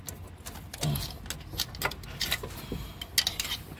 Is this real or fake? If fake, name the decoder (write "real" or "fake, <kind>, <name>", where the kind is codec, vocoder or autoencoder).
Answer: real